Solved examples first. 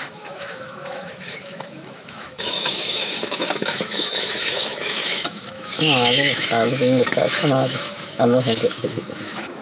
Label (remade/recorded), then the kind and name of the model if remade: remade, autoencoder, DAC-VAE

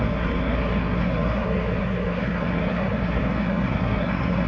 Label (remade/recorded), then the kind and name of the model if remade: remade, codec, SNAC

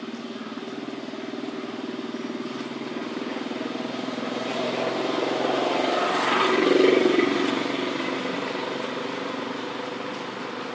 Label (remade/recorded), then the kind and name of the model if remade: recorded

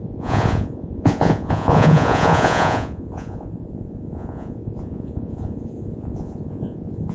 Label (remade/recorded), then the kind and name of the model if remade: remade, vocoder, Vocos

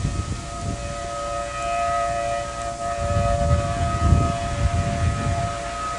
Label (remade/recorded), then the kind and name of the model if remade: recorded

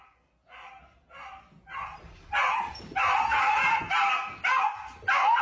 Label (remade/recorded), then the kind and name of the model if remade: recorded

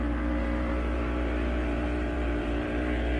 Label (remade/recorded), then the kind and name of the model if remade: remade, vocoder, BigVGAN v2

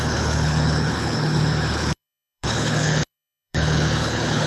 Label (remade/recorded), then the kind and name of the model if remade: remade, codec, HILCodec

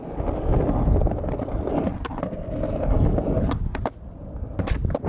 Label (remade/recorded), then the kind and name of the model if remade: recorded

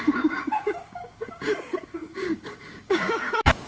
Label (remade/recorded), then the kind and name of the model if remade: remade, codec, DAC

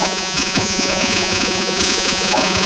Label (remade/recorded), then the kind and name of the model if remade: remade, vocoder, Vocos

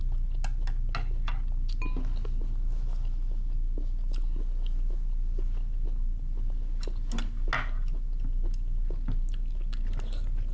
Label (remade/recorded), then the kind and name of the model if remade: recorded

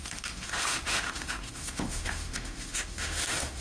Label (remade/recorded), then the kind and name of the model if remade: remade, autoencoder, DAC-VAE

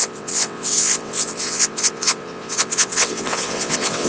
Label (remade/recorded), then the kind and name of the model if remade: remade, vocoder, WaveNeXt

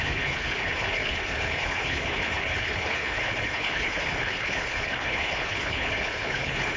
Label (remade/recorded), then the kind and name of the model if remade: remade, codec, HILCodec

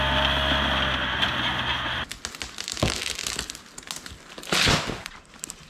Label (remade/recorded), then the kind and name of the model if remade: recorded